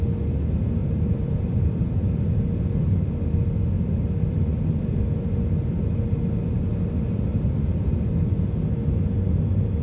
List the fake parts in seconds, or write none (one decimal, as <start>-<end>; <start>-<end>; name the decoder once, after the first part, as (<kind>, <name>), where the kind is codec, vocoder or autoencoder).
0.8-1.9 (vocoder, BigVGAN v2); 7.3-8.1